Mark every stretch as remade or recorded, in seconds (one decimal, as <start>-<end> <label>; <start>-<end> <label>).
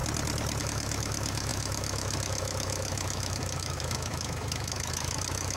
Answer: 0.0-0.6 recorded; 0.6-5.6 remade